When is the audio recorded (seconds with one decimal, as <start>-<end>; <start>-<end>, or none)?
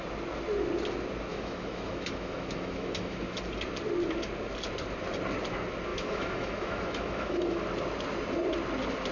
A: 0.0-1.3; 3.4-5.9; 7.6-9.1